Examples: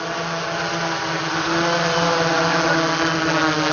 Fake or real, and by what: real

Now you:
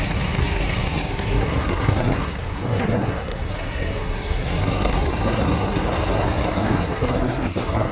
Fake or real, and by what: fake, codec, SNAC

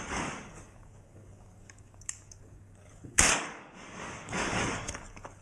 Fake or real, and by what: fake, codec, DAC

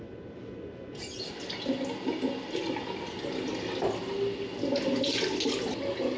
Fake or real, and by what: real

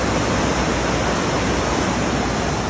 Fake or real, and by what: real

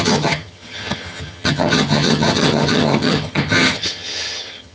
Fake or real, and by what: fake, vocoder, HiFi-GAN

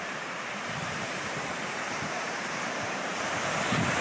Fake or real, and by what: fake, vocoder, BigVGAN v2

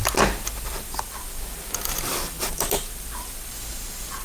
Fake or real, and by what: real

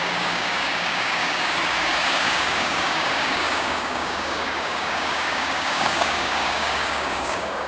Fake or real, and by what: fake, codec, DAC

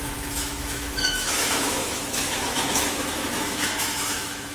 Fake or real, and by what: fake, autoencoder, DAC-VAE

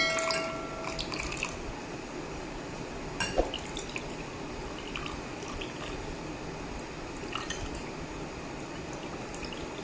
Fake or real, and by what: real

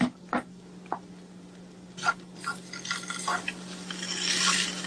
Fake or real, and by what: real